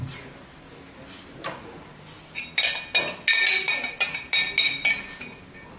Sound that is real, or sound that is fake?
real